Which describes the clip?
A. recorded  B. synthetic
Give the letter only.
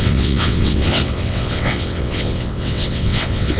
B